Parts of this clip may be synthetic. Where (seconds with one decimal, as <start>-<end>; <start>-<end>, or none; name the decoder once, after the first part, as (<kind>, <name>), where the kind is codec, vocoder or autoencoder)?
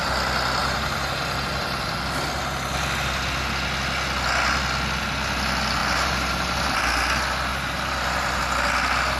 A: 0.6-2.0 (vocoder, BigVGAN v2); 5.8-6.8; 7.5-8.4